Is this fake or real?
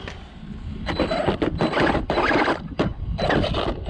real